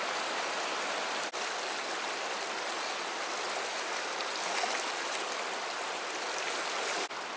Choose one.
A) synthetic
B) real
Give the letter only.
B